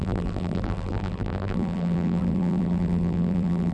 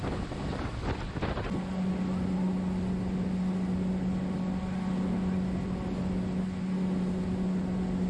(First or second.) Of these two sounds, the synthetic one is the first